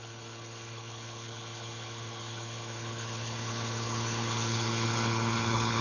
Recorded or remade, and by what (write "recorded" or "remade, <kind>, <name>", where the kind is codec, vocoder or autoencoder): remade, codec, HILCodec